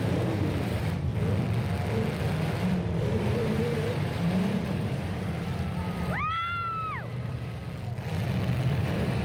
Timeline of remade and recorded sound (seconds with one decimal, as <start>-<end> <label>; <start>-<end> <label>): 0.0-1.1 remade; 1.1-2.9 recorded; 2.9-7.6 remade; 7.6-8.7 recorded; 8.7-9.2 remade

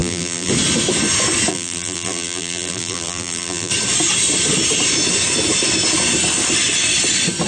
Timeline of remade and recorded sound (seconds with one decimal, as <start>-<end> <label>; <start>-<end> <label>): 0.0-0.5 remade; 0.5-1.5 recorded; 1.5-3.7 remade; 3.7-7.5 recorded

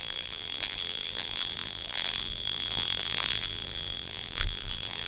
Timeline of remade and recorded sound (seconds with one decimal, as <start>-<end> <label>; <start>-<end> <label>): 0.0-5.1 remade

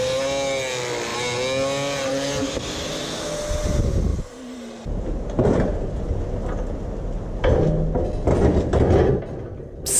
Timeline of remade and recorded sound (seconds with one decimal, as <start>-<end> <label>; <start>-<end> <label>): 0.0-4.1 recorded; 4.1-6.2 remade; 6.2-10.0 recorded

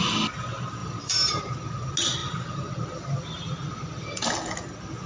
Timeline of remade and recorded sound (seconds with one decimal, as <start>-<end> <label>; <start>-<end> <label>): 0.0-0.8 recorded; 0.8-1.4 remade; 1.4-2.2 recorded; 2.2-3.5 remade; 3.5-5.1 recorded

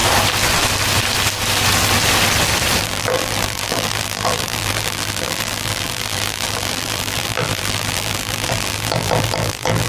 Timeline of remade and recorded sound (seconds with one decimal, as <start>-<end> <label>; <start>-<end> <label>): 0.0-2.8 recorded; 2.8-9.9 remade

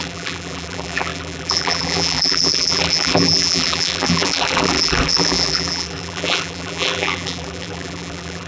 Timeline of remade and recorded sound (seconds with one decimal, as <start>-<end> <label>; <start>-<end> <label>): 0.0-8.5 remade

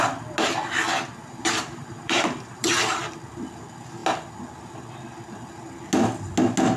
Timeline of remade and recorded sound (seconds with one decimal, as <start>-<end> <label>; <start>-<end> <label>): 0.0-1.2 recorded; 1.2-3.0 remade; 3.0-6.8 recorded